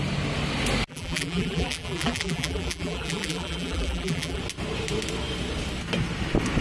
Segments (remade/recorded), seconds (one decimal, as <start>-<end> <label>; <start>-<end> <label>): 0.0-0.9 recorded; 0.9-4.4 remade; 4.4-6.6 recorded